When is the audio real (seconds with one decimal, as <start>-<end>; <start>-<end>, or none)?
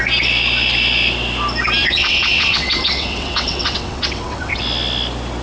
0.0-1.8; 4.6-5.4